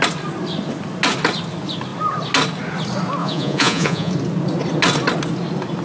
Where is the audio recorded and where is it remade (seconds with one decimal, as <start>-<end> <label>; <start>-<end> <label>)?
0.0-3.2 recorded; 3.2-4.1 remade; 4.1-5.8 recorded